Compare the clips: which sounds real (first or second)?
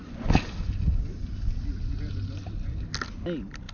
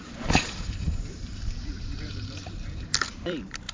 first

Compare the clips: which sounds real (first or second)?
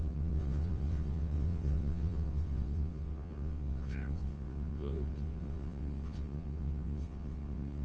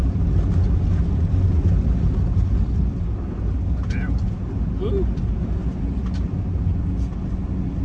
second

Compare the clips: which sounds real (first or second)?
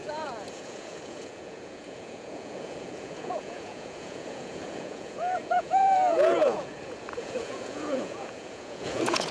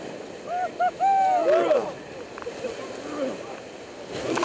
second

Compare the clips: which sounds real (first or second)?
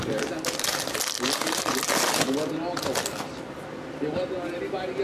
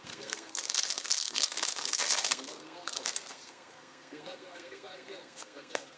first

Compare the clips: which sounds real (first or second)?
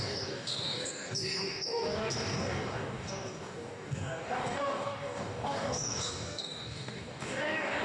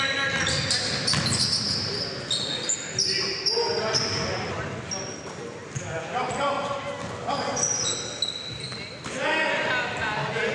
second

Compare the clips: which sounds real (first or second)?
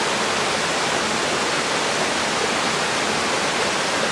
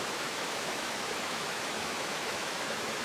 first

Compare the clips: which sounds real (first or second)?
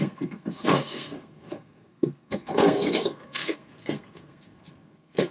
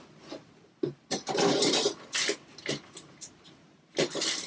second